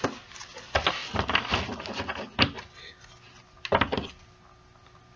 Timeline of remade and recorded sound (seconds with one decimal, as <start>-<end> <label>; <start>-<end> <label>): 0.0-5.2 recorded